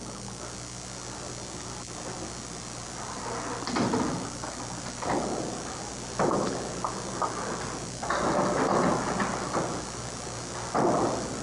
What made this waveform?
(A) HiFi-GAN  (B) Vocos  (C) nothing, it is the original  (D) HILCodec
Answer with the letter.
C